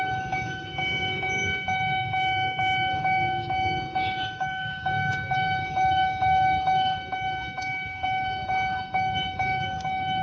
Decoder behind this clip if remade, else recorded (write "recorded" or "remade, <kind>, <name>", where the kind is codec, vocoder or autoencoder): remade, autoencoder, DAC-VAE